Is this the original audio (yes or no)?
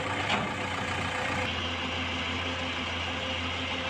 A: yes